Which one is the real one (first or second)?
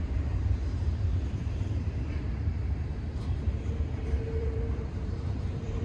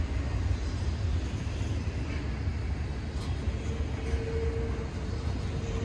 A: second